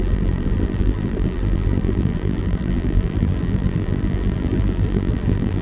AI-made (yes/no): yes